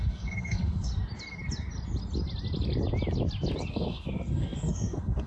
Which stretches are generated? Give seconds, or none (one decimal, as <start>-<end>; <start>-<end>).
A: 0.0-0.9; 3.7-5.3